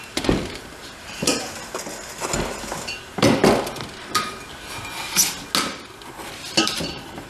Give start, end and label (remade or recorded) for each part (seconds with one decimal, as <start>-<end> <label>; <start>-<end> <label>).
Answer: 0.0-3.4 remade; 3.4-6.6 recorded; 6.6-7.3 remade